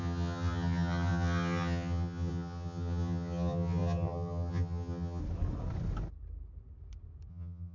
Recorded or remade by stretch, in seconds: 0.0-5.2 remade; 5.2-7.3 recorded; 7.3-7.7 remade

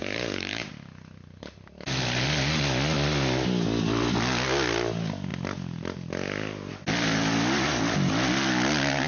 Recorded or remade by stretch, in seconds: 0.0-0.7 remade; 0.7-9.1 recorded

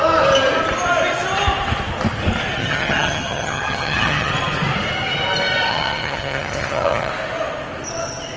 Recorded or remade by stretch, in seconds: 0.0-2.6 recorded; 2.6-4.3 remade; 4.3-5.7 recorded; 5.7-7.1 remade; 7.1-8.4 recorded

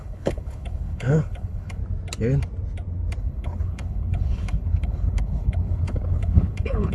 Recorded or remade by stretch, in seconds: 0.0-1.8 remade; 1.8-3.2 recorded; 3.2-6.9 remade